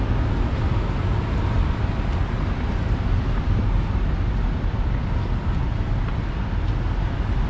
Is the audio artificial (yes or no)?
no